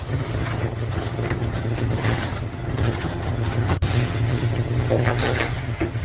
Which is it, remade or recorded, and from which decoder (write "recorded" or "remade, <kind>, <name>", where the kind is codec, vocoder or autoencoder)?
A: remade, vocoder, HiFi-GAN